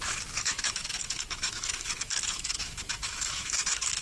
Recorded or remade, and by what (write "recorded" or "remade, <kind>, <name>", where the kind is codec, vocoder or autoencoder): remade, autoencoder, DAC-VAE